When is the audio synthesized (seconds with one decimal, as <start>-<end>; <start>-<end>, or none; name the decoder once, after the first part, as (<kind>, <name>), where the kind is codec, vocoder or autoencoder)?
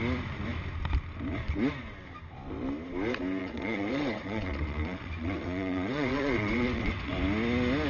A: 3.4-7.1 (vocoder, WaveNeXt)